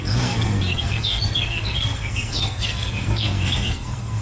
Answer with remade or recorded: remade